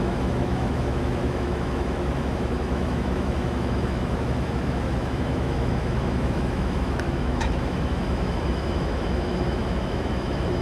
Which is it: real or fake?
fake